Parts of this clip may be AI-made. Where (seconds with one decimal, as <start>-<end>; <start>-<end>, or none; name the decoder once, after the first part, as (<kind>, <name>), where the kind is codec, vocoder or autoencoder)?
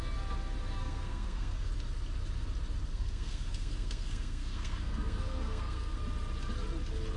0.8-1.7 (codec, SNAC); 2.9-6.0